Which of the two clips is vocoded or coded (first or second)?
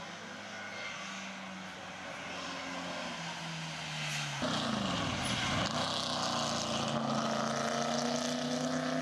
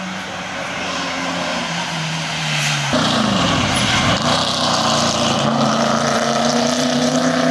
second